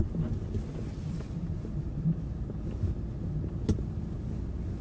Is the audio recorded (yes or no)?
yes